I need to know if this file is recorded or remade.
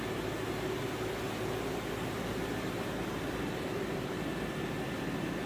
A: recorded